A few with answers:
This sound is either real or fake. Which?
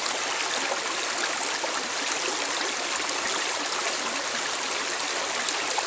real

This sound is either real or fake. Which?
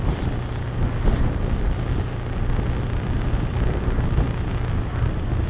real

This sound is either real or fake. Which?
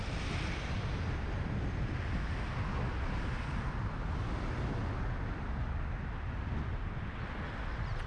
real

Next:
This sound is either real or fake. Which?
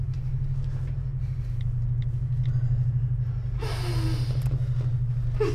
real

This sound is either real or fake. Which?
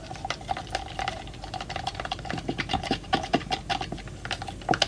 real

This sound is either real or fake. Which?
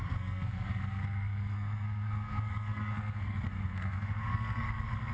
fake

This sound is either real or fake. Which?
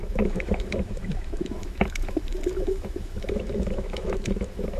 fake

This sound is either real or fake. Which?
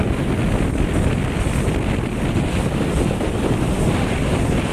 real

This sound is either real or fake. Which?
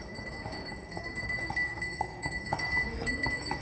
fake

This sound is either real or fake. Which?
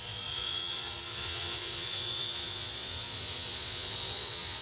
fake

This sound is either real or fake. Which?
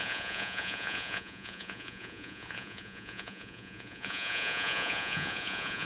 fake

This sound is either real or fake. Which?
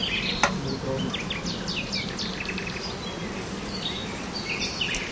real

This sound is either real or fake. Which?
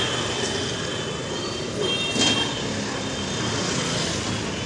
real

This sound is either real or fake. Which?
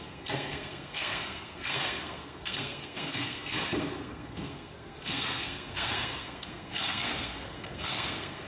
fake